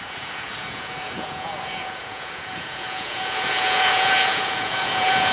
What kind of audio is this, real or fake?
fake